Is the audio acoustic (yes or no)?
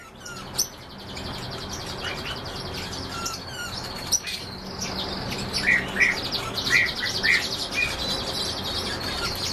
yes